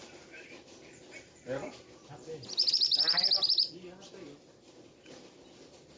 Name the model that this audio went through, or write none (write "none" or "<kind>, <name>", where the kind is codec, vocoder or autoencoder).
none